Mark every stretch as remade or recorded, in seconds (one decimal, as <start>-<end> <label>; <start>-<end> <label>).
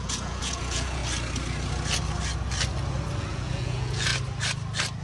0.0-1.0 remade; 1.0-3.2 recorded; 3.2-4.1 remade; 4.1-5.0 recorded